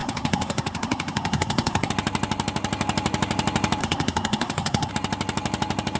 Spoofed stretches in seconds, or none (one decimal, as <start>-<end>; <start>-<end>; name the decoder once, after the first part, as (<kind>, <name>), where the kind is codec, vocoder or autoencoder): 0.0-1.9 (codec, SNAC); 3.8-4.9